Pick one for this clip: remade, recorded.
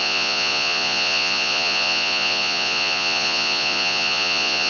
remade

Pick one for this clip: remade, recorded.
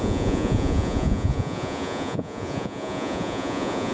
remade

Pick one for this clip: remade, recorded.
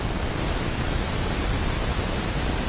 recorded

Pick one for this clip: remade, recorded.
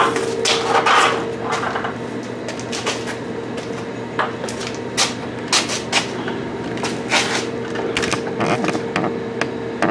recorded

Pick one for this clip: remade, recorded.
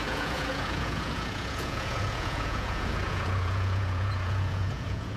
remade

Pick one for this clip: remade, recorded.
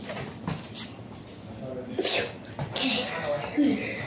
recorded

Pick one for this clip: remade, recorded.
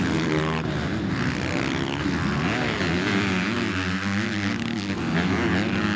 recorded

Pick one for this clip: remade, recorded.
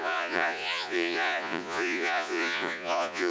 remade